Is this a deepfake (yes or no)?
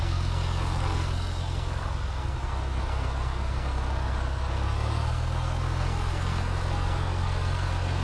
yes